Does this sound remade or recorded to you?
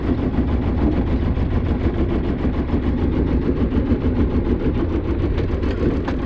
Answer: recorded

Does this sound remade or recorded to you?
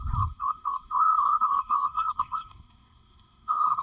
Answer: remade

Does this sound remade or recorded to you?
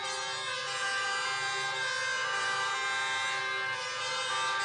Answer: recorded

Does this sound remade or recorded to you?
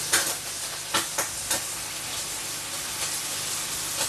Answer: recorded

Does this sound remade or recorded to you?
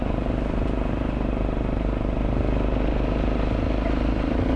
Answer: recorded